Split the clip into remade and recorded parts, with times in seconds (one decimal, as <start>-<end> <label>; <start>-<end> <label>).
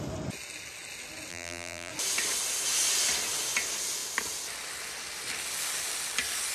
0.0-1.3 recorded; 1.3-1.9 remade; 1.9-6.5 recorded